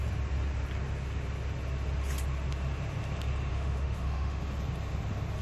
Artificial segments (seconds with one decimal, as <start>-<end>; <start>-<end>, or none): 3.5-4.4